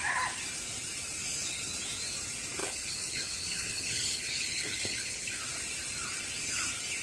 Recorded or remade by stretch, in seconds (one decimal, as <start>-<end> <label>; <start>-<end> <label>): 0.0-2.6 recorded; 2.6-5.4 remade; 5.4-7.0 recorded